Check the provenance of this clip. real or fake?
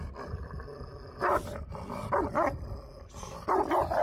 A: real